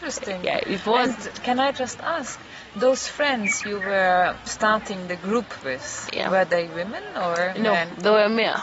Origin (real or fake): real